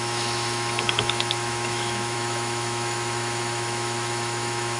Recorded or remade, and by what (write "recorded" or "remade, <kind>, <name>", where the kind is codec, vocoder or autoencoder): remade, autoencoder, DAC-VAE